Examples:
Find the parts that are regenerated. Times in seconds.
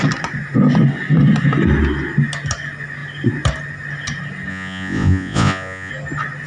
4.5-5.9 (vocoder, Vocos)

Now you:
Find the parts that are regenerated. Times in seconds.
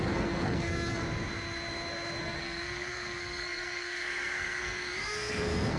0.0-1.0 (codec, SNAC); 2.2-5.8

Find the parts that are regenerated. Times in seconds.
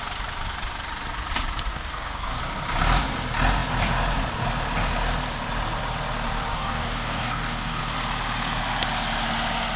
1.7-2.4 (codec, DAC); 6.5-7.8